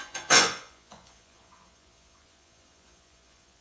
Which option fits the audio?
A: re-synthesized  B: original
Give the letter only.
A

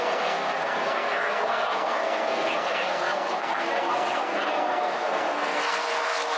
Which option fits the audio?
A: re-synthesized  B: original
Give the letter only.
A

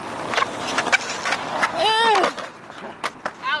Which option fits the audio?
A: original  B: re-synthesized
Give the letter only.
A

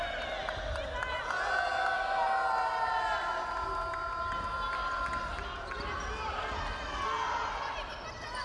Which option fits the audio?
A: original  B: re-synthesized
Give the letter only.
A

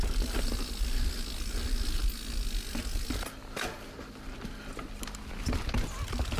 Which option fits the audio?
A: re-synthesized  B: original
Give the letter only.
B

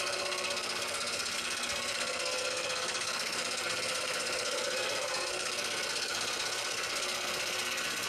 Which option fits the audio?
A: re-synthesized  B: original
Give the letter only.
A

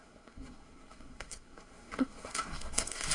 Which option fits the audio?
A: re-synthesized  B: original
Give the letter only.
A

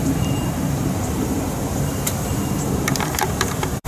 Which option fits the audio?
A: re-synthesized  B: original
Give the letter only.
A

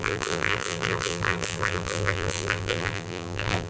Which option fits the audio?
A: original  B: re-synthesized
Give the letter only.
B